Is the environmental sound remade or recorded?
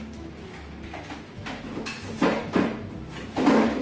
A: recorded